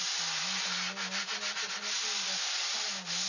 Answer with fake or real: real